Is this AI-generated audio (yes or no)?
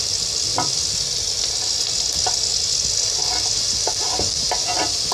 no